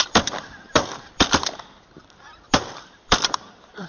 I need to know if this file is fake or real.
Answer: fake